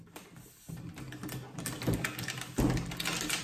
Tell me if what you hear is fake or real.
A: real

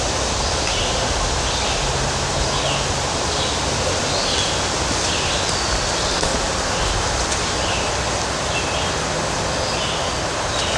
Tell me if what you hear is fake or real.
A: real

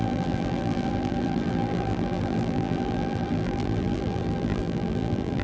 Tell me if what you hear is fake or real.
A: fake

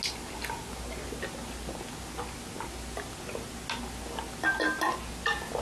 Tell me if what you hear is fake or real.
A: real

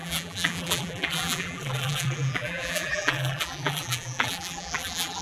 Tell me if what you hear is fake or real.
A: fake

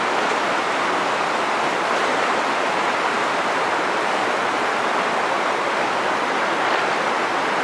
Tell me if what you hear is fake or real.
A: fake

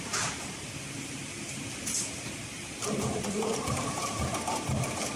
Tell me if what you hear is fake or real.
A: fake